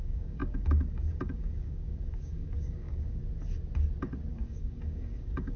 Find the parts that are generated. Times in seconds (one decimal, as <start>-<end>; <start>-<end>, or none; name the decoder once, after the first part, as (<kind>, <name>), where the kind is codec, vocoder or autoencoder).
0.0-3.2 (codec, DAC); 4.3-5.6

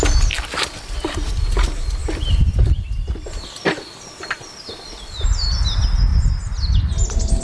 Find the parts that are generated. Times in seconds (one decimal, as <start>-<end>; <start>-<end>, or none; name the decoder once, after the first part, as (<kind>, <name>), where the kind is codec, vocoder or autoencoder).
none

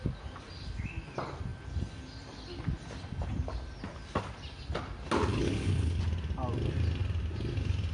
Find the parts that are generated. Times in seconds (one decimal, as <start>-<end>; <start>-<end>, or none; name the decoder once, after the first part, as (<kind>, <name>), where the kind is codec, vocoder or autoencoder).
5.3-6.0 (codec, HILCodec)